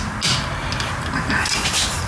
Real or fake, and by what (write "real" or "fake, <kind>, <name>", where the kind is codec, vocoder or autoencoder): real